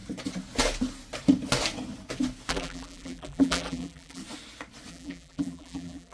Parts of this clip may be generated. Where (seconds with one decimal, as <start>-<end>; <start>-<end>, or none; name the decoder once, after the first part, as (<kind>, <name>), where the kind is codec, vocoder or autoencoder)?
2.5-4.2 (vocoder, BigVGAN v2); 4.9-6.1